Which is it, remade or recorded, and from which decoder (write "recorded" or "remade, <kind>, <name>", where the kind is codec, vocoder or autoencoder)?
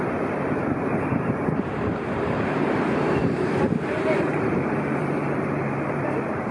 remade, vocoder, BigVGAN v2